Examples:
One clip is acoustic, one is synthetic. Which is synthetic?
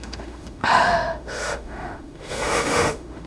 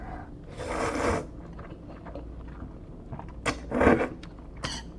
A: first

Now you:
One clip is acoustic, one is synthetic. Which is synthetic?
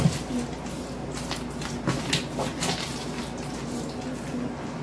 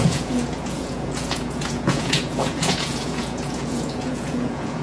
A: second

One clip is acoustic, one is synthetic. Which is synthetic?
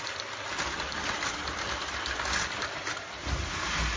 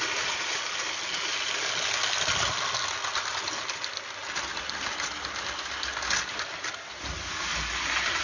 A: first